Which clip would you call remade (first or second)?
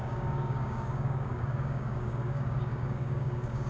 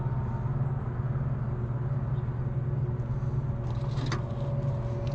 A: first